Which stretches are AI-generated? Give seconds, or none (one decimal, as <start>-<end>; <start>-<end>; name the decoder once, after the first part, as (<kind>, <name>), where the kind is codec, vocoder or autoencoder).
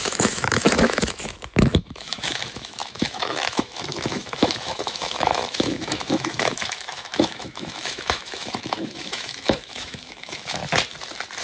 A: 0.0-10.6 (autoencoder, DAC-VAE)